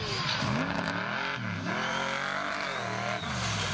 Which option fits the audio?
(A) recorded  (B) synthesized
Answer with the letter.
A